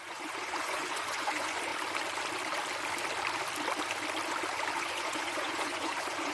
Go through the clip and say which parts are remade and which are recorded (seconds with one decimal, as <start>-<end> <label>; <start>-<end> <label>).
0.0-1.7 remade; 1.7-4.8 recorded; 4.8-6.3 remade